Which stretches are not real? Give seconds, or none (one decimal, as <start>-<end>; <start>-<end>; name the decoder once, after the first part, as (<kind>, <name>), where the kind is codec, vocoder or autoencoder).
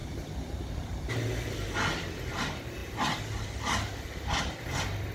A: 0.0-1.1 (vocoder, BigVGAN v2)